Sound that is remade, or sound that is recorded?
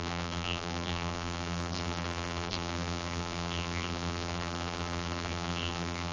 remade